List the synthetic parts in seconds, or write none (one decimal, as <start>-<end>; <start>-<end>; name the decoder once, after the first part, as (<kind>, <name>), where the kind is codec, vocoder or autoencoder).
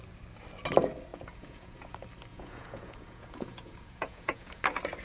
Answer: 1.1-1.9 (vocoder, Vocos); 2.3-4.6